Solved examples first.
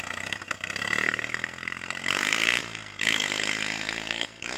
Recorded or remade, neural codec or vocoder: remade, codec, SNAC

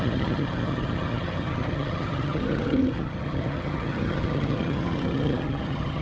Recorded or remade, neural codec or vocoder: remade, vocoder, HiFi-GAN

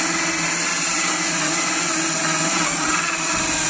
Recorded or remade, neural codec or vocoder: recorded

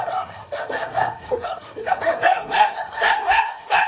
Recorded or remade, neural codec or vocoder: remade, codec, SNAC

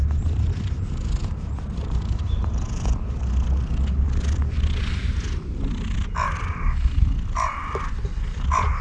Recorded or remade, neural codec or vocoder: remade, vocoder, BigVGAN v2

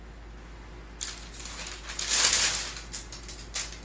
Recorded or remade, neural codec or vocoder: recorded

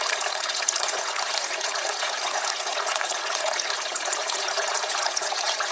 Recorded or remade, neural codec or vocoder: remade, vocoder, Vocos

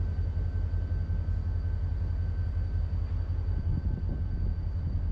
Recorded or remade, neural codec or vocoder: recorded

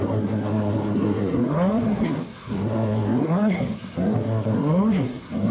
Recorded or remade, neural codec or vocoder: remade, codec, SNAC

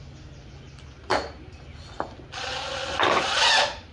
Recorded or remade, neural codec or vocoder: recorded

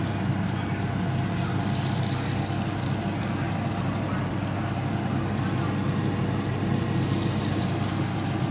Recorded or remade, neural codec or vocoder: recorded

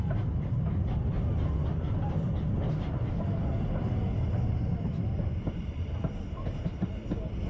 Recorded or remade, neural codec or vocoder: recorded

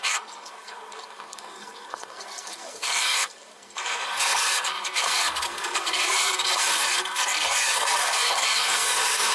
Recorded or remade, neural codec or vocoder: remade, codec, SNAC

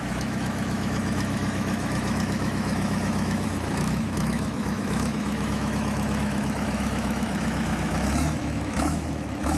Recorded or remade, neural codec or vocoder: remade, autoencoder, DAC-VAE